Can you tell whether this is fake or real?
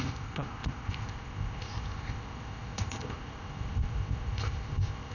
fake